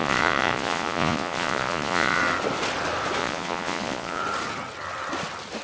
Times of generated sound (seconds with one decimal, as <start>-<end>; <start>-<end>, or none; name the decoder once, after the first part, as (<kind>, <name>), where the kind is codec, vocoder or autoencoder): 0.0-2.2 (vocoder, Vocos); 3.2-4.2